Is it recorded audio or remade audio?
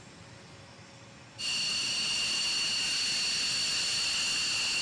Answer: recorded